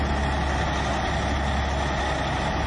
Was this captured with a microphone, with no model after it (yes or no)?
yes